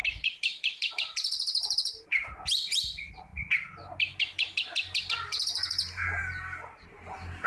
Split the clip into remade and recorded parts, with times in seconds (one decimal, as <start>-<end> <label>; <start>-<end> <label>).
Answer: 0.0-3.3 remade; 3.3-5.1 recorded; 5.1-6.2 remade; 6.2-6.9 recorded; 6.9-7.5 remade